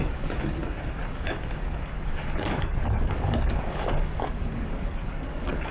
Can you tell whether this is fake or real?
fake